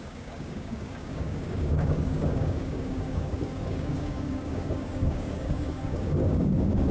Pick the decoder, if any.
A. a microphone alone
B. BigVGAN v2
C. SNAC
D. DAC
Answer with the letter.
D